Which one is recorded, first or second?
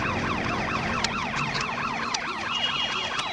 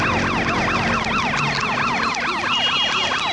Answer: second